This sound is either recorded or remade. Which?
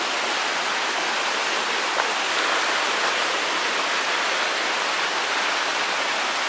recorded